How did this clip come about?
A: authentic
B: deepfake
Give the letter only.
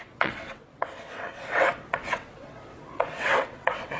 B